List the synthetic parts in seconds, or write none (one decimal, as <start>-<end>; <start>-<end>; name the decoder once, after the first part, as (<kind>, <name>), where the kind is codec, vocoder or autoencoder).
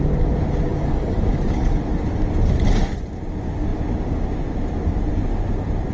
0.7-1.8 (codec, DAC)